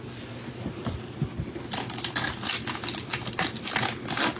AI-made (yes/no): no